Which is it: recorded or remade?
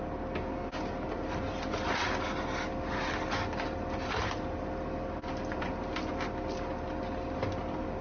recorded